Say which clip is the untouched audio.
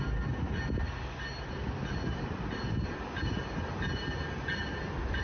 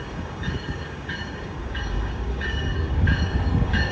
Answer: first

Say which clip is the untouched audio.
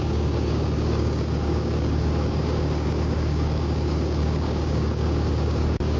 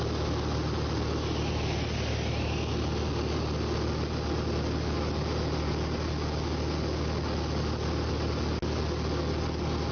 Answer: second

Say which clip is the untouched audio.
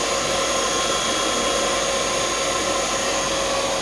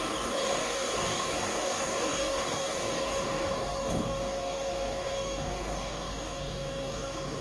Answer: first